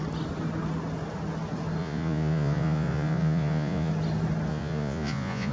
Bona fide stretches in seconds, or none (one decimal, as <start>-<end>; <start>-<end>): 0.0-1.8; 3.9-4.5

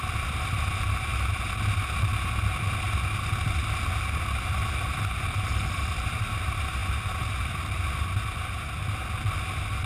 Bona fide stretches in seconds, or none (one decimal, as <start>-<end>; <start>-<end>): 0.0-9.9

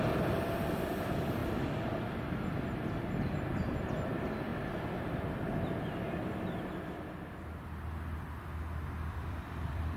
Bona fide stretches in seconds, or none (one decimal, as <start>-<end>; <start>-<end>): 1.4-3.1; 4.5-9.1

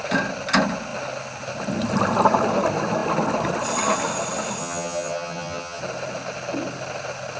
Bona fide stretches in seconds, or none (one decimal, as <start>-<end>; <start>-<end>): 0.0-4.6; 5.8-7.4

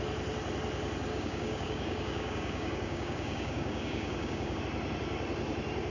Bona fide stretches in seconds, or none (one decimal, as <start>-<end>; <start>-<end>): 0.0-1.1; 4.6-5.9

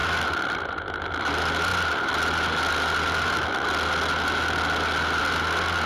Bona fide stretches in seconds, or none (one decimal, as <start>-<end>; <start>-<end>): 0.0-5.9

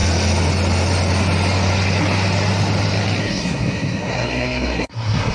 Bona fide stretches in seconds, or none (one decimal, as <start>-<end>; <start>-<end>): 0.0-3.2